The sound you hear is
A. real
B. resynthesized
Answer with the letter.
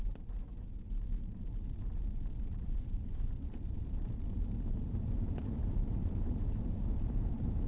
B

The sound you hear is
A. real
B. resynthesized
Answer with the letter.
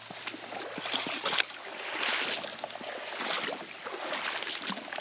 A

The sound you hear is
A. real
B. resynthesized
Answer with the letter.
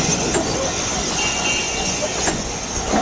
B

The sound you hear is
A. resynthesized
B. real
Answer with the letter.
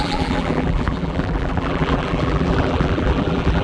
A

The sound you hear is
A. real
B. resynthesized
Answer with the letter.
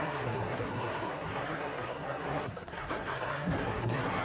B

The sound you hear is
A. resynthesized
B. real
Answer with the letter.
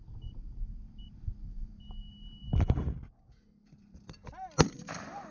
A